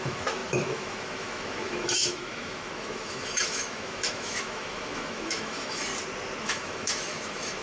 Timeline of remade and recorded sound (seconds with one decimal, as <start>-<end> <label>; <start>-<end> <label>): 0.0-5.9 remade; 5.9-6.4 recorded; 6.4-7.6 remade